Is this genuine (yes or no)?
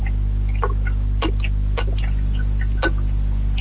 yes